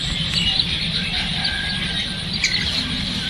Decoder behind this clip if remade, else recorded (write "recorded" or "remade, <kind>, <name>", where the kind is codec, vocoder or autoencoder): recorded